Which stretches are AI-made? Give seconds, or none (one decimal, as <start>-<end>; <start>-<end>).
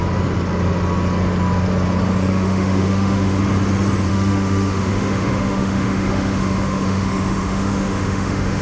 2.3-3.4; 4.1-8.6